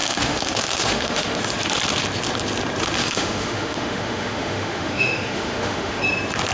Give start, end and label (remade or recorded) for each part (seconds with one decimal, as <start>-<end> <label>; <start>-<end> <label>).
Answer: 0.0-1.4 remade; 1.4-3.0 recorded; 3.0-6.0 remade; 6.0-6.5 recorded

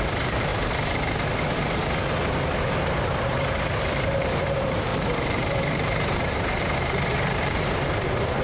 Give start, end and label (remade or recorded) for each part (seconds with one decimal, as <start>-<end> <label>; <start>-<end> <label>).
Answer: 0.0-0.5 remade; 0.5-2.6 recorded; 2.6-8.4 remade

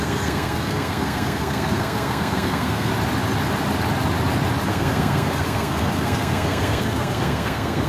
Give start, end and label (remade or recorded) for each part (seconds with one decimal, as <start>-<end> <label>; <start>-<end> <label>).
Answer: 0.0-2.9 remade; 2.9-4.7 recorded; 4.7-7.9 remade

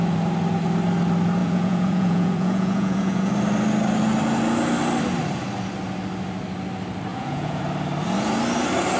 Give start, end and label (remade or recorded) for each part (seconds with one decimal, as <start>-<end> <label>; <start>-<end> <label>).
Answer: 0.0-1.4 recorded; 1.4-3.3 remade; 3.3-7.1 recorded; 7.1-7.6 remade; 7.6-9.0 recorded

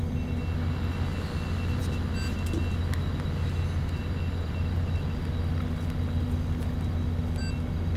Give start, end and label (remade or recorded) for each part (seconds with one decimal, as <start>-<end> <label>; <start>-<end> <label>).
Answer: 0.0-8.0 recorded